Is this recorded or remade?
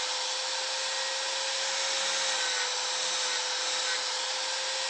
recorded